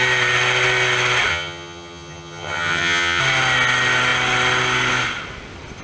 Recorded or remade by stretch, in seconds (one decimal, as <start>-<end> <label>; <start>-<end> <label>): 0.0-1.3 recorded; 1.3-3.2 remade; 3.2-5.8 recorded